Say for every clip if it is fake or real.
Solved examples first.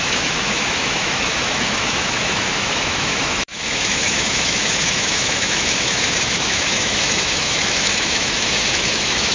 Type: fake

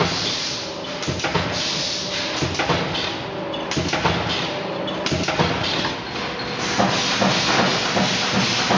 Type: real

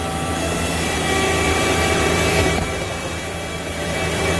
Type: fake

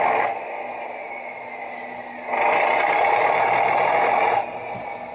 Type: real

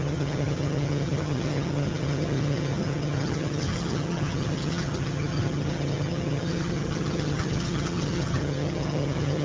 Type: fake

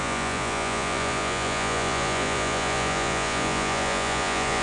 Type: fake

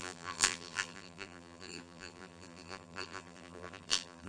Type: fake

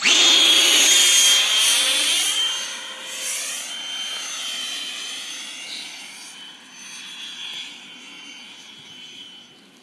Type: real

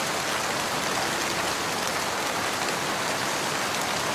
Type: real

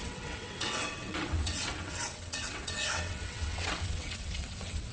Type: fake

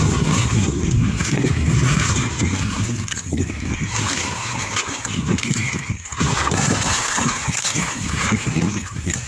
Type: fake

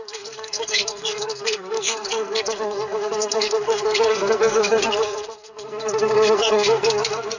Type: fake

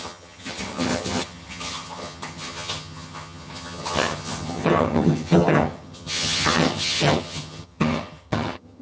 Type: fake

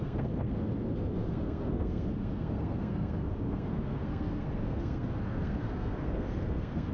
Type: fake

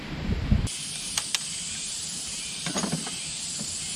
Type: real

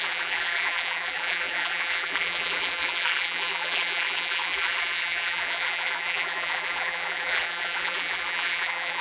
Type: fake